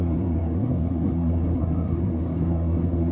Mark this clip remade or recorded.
remade